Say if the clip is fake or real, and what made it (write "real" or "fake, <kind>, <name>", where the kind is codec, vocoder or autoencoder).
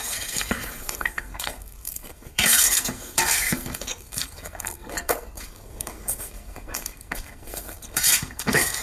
fake, codec, SNAC